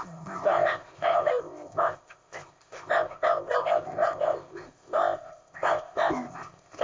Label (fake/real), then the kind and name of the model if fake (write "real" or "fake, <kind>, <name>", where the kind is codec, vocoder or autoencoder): fake, codec, ZipCodec